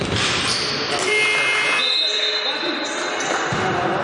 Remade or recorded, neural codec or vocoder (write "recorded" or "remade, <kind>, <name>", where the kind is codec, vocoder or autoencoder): recorded